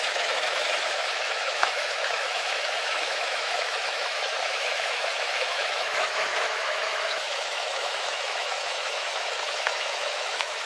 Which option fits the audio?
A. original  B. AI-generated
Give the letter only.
B